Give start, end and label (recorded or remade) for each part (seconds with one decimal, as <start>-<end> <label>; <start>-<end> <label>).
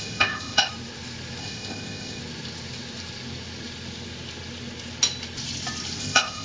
0.0-0.7 remade; 0.7-1.4 recorded; 1.4-2.2 remade; 2.2-6.0 recorded; 6.0-6.4 remade